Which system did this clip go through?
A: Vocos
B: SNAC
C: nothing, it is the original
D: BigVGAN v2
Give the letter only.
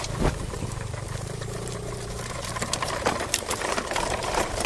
D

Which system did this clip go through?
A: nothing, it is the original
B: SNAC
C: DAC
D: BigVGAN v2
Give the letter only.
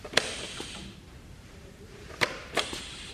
D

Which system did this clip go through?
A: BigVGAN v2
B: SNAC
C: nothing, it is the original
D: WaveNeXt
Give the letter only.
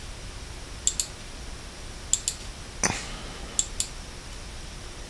C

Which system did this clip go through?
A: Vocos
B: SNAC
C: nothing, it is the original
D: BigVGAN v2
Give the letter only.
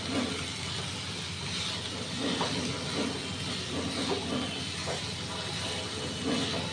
C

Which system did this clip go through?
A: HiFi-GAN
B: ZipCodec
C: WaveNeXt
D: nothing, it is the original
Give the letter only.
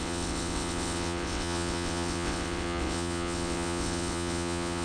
C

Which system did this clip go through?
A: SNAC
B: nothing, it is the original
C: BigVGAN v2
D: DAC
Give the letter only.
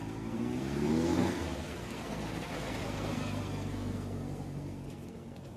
A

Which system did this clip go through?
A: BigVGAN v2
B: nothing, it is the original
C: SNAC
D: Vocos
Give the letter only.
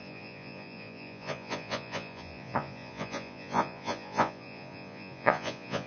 D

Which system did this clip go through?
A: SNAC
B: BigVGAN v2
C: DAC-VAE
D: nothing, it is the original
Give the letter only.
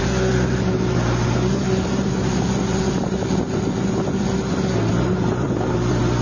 D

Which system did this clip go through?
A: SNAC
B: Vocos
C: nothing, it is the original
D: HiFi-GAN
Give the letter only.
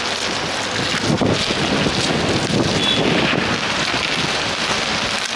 C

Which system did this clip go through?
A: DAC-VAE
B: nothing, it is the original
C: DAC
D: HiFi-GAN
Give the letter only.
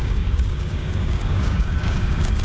C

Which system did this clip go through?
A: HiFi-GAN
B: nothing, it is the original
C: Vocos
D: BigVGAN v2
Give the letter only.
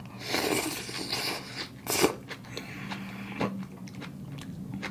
B